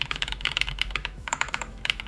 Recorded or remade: remade